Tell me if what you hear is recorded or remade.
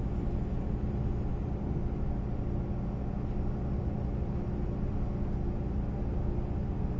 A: recorded